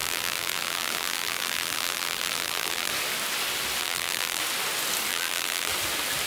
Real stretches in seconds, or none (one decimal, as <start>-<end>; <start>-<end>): 2.9-3.8; 4.4-5.1; 5.7-6.3